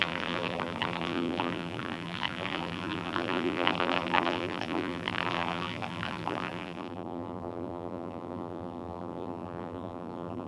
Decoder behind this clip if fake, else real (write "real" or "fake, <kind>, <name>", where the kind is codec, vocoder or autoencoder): fake, vocoder, BigVGAN v2